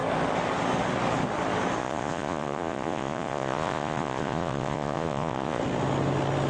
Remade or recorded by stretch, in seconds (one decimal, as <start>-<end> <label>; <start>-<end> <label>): 0.0-1.8 recorded; 1.8-5.6 remade; 5.6-6.5 recorded